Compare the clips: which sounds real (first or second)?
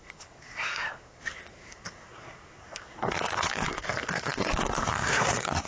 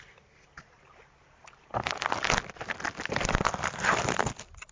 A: second